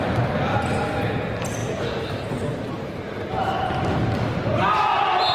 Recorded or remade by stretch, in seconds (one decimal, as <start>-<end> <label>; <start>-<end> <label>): 0.0-1.6 recorded; 1.6-4.1 remade; 4.1-5.3 recorded